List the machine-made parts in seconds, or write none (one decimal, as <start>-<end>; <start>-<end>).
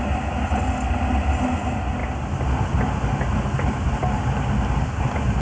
none